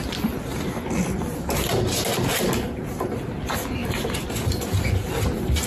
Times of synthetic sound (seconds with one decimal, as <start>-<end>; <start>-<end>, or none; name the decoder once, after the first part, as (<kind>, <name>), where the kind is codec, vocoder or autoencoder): 0.5-1.9 (vocoder, BigVGAN v2); 3.8-5.2